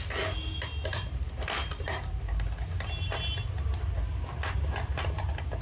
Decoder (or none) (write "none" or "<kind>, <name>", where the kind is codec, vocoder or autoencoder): none